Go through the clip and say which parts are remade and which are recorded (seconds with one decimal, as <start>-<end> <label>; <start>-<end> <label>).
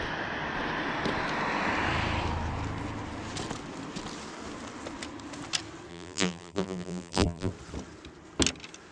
0.0-5.9 recorded; 5.9-7.5 remade; 7.5-8.9 recorded